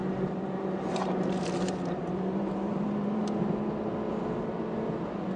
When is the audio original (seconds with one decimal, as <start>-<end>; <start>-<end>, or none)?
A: 3.2-5.4